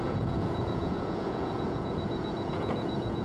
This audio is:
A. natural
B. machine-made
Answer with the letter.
B